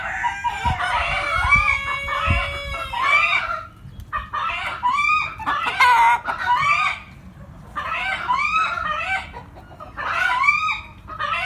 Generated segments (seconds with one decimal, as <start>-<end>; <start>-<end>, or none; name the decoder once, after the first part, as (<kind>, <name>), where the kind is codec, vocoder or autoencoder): none